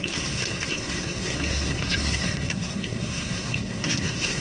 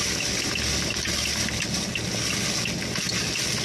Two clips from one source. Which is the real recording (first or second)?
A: second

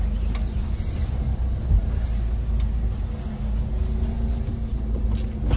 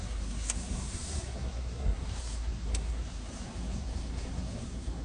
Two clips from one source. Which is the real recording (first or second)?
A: first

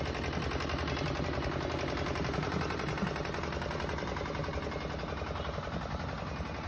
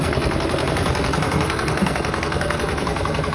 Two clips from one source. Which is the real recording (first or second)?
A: first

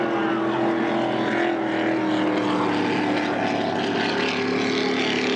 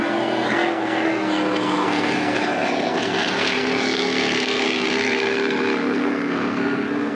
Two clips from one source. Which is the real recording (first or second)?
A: first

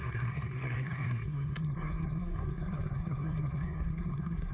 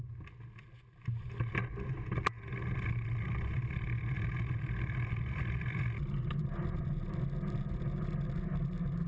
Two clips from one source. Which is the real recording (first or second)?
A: second